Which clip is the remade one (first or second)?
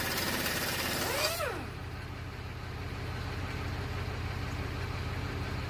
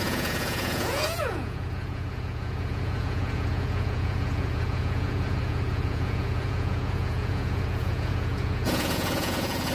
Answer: second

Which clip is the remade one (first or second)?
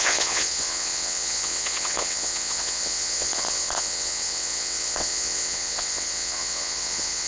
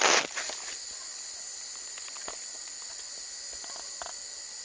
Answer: first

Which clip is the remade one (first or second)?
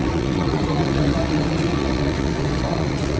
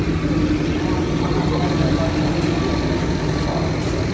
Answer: first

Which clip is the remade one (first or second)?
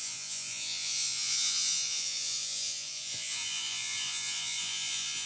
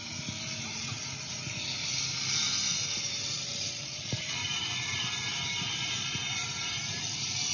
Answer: first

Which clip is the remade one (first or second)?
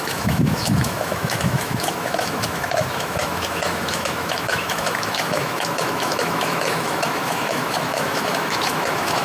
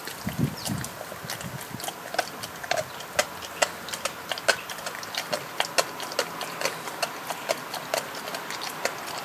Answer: first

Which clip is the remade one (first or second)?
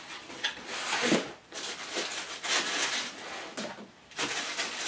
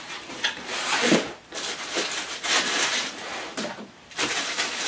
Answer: second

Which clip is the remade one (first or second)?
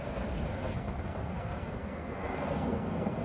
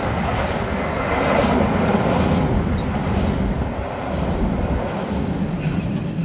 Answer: first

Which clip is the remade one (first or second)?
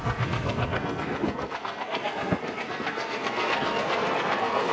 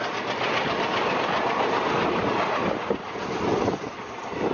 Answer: first